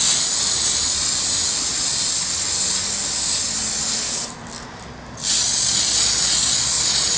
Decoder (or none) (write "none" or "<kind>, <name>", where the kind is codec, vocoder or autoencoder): none